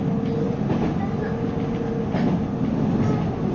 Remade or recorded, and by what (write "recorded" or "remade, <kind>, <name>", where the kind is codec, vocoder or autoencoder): recorded